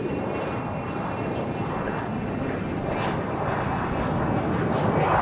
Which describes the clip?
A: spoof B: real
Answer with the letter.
B